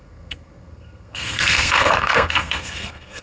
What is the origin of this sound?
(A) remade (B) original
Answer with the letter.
A